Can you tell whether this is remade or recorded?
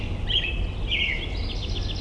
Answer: recorded